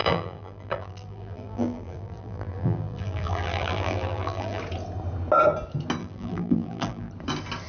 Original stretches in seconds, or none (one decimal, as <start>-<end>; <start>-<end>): 4.6-6.0; 7.1-7.7